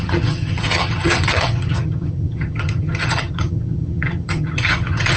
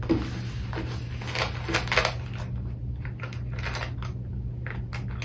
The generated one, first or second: first